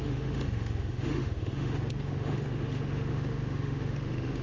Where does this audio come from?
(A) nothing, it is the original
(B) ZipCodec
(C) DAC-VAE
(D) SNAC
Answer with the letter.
C